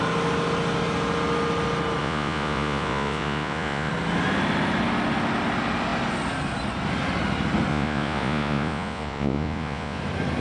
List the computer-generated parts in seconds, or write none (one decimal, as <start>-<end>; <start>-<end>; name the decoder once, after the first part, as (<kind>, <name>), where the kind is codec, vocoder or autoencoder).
2.0-3.9 (vocoder, Vocos); 7.7-10.0